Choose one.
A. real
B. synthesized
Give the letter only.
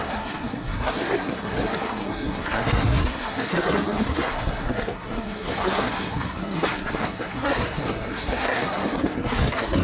B